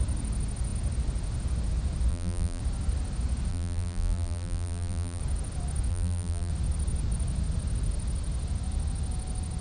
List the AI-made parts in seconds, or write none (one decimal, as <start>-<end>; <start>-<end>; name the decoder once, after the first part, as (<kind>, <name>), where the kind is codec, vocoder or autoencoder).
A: 2.1-2.6 (vocoder, BigVGAN v2); 3.5-5.2; 5.9-6.5